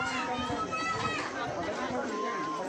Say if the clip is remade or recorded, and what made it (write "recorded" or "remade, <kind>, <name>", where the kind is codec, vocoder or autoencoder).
recorded